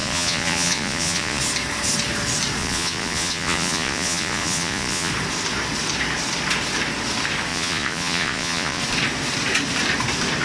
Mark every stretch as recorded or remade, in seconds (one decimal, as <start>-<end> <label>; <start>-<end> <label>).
0.0-1.4 remade; 1.4-2.6 recorded; 2.6-5.1 remade; 5.1-7.5 recorded; 7.5-8.8 remade; 8.8-10.4 recorded